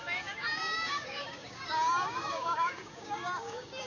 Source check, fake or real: fake